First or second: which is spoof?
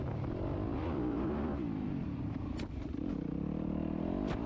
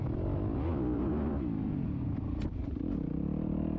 first